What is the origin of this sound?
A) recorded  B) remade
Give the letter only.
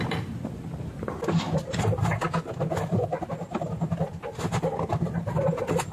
A